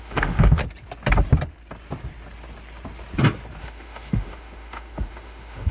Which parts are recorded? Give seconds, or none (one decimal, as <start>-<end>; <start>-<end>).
0.6-3.6